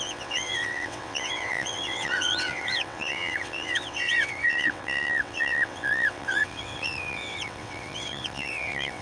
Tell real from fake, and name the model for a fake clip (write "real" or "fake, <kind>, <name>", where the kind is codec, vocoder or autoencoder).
fake, vocoder, WaveNeXt